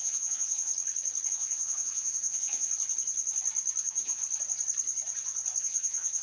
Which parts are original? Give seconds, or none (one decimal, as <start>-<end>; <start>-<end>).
0.7-1.3; 2.7-3.8; 4.2-5.6